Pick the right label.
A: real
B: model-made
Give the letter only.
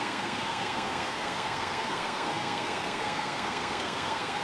B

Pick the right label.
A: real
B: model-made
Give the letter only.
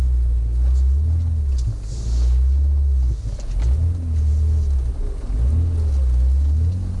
A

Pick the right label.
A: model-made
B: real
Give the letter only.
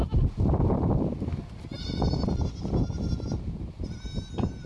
A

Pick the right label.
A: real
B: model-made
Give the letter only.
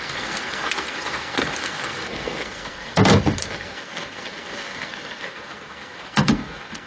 B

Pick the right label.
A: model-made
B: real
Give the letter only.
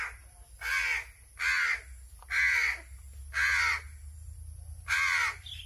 B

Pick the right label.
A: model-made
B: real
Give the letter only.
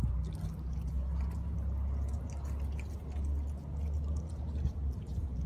B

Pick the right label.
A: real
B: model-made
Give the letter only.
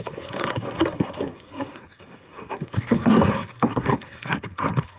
B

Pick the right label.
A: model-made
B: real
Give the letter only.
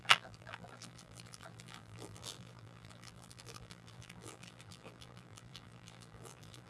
A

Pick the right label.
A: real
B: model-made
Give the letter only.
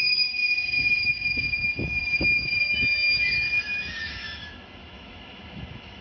B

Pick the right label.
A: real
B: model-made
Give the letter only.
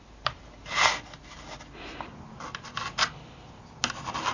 A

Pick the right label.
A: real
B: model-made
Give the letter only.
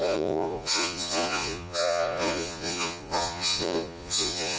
B